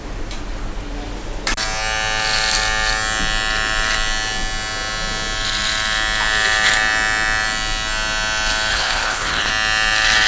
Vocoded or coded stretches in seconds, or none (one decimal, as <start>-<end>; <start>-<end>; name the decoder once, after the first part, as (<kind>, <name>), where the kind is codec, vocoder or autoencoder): 8.7-9.5 (codec, HILCodec)